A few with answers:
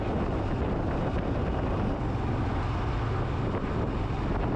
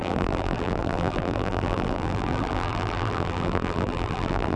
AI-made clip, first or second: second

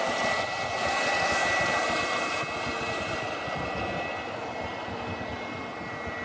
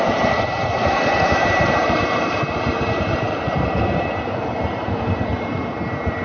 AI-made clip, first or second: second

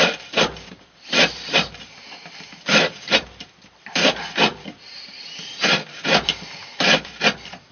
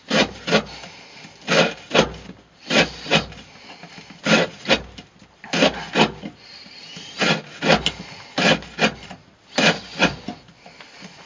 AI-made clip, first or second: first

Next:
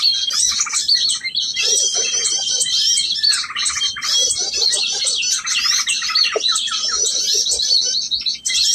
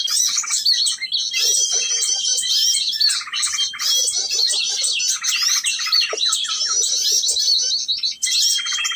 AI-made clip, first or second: first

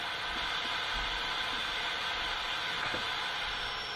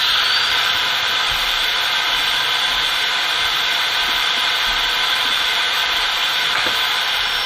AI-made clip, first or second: second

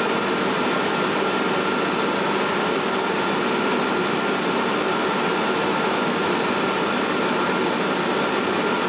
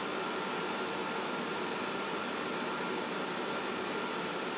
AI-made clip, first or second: first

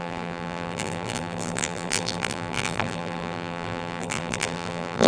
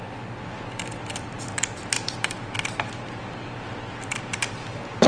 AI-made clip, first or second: first